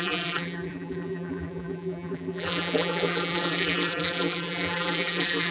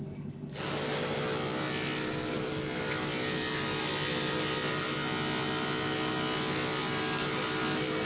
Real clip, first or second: second